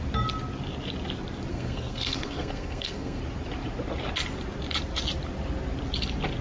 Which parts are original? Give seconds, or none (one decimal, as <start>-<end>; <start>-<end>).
0.0-1.5; 3.2-6.4

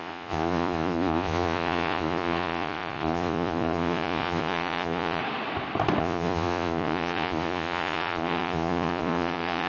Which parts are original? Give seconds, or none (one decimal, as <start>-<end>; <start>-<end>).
5.2-6.0

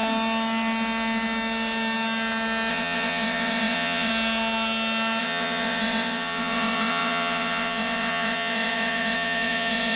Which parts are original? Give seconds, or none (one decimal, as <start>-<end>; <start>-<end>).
0.0-2.7; 4.1-5.2

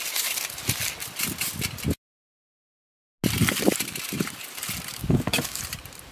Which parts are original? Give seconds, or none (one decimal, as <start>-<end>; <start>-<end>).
0.0-4.9; 5.6-6.1

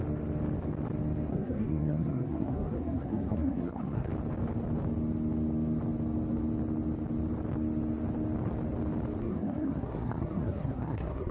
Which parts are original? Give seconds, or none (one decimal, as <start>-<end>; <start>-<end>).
0.0-1.3; 4.1-9.2

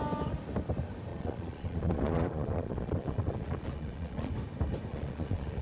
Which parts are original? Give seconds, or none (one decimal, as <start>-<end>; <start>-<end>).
0.0-1.1; 4.3-4.9